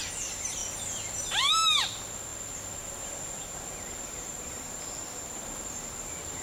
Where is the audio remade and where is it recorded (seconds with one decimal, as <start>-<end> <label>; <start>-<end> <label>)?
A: 0.0-0.6 remade; 0.6-1.5 recorded; 1.5-6.4 remade